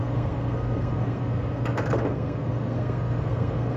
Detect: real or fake fake